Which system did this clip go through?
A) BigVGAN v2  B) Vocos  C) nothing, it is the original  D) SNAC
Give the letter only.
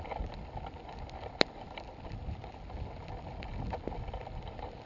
C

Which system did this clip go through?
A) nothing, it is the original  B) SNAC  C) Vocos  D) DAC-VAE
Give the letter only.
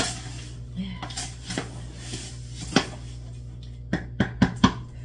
A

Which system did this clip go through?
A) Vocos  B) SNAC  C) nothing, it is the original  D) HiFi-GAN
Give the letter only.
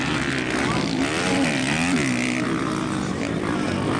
C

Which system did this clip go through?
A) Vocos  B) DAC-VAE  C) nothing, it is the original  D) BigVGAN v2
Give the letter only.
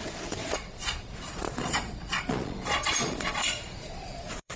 A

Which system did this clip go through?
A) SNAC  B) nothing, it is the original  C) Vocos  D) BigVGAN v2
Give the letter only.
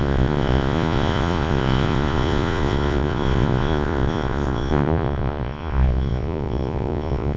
C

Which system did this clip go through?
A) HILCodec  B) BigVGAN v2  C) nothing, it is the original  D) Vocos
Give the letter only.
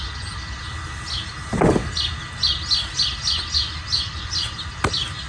C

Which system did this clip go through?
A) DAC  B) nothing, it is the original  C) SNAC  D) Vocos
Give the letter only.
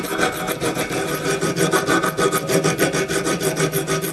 B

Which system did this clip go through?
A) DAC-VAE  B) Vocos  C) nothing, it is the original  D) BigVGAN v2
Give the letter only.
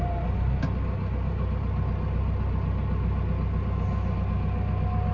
C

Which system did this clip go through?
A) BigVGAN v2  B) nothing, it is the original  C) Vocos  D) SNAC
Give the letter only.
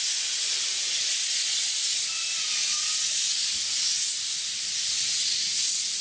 C